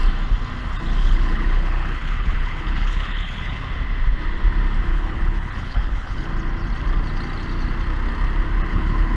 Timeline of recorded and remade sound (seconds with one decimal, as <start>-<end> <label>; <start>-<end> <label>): 0.0-1.0 recorded; 1.0-3.6 remade; 3.6-4.9 recorded; 4.9-6.3 remade; 6.3-8.7 recorded; 8.7-9.2 remade